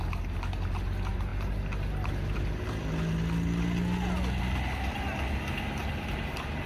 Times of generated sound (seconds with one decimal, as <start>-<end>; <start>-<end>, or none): none